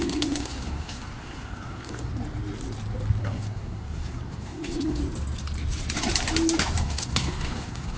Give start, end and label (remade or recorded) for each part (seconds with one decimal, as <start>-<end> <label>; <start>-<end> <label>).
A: 0.0-2.1 remade; 2.1-3.2 recorded; 3.2-5.0 remade; 5.0-6.8 recorded; 6.8-8.0 remade